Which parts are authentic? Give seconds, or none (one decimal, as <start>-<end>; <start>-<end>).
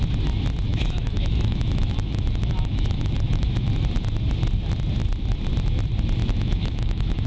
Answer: 0.0-0.7; 3.7-6.2